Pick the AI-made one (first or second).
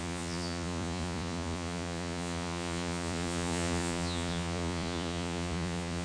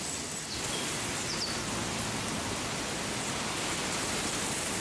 first